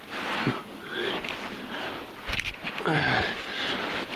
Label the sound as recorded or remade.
recorded